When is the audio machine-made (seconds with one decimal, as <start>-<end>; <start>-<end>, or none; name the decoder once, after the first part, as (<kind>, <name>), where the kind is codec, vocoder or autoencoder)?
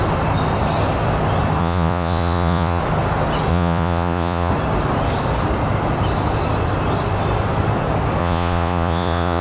1.6-2.8 (vocoder, Vocos); 3.5-4.5; 8.2-9.4